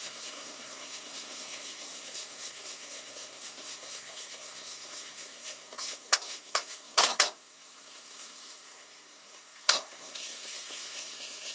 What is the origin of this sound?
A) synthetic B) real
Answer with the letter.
A